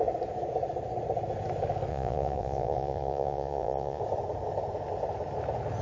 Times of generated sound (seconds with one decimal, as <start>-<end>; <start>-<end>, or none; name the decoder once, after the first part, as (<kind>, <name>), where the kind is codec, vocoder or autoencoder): 1.9-4.0 (vocoder, Vocos)